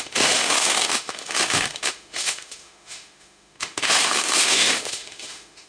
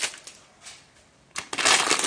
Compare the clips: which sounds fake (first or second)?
first